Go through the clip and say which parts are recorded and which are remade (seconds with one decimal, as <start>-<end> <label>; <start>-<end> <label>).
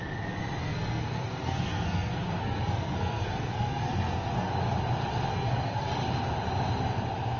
0.0-0.6 recorded; 0.6-4.5 remade; 4.5-5.3 recorded; 5.3-5.9 remade; 5.9-7.4 recorded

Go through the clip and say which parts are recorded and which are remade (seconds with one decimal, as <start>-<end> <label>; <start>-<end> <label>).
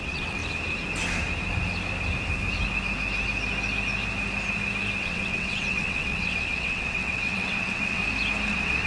0.0-0.4 remade; 0.4-5.0 recorded; 5.0-8.0 remade; 8.0-8.5 recorded; 8.5-8.9 remade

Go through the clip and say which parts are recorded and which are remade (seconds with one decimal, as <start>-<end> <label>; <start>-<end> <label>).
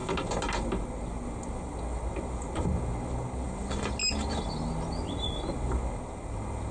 0.0-6.7 recorded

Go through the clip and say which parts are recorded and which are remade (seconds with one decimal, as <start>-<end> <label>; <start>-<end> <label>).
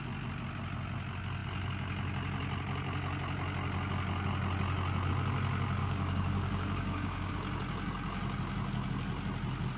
0.0-5.8 recorded; 5.8-7.3 remade; 7.3-9.8 recorded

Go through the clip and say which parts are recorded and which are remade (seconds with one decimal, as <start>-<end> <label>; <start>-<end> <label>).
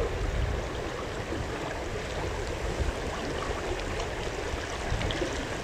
0.0-5.6 recorded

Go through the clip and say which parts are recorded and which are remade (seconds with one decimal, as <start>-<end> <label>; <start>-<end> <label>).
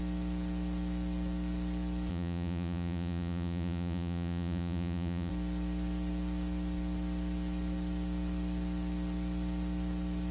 0.0-2.1 recorded; 2.1-5.3 remade; 5.3-10.3 recorded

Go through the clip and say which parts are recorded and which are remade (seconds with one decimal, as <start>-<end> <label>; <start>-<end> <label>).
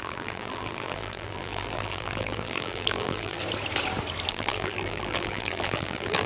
0.0-3.4 remade; 3.4-4.3 recorded; 4.3-6.3 remade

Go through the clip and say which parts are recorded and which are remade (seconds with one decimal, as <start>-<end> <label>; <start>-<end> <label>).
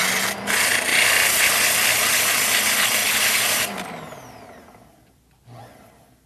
0.0-6.3 recorded